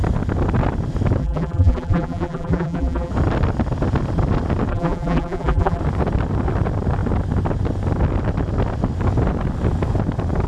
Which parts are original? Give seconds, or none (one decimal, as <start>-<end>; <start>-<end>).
0.0-1.2; 3.1-4.7; 5.8-10.5

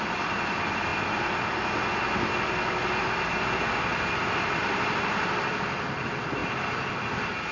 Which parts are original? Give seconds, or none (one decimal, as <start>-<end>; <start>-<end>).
0.9-3.8; 6.4-7.5

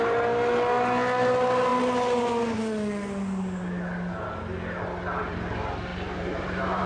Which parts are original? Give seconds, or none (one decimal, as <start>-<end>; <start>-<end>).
0.0-5.9

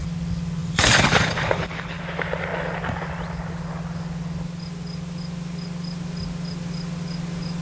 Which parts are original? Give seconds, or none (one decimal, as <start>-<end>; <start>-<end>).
0.0-0.6; 2.0-7.6

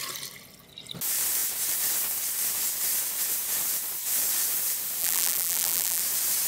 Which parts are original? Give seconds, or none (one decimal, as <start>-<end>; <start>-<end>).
0.0-5.0; 6.0-6.5

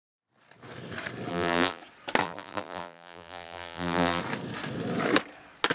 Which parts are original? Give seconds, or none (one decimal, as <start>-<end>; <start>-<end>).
0.0-1.3; 1.8-2.2; 4.2-5.7

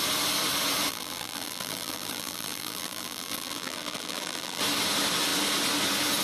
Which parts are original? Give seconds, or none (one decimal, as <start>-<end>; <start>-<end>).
0.0-0.9; 4.6-6.2